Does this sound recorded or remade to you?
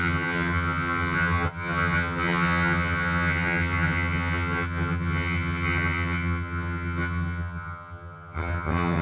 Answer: remade